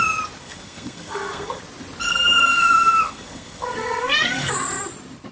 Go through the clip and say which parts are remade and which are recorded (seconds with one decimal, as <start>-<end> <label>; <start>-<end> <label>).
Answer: 0.0-0.4 recorded; 0.4-1.6 remade; 1.6-2.1 recorded; 2.1-4.5 remade; 4.5-5.3 recorded